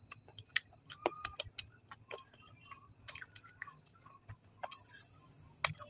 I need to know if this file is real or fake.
real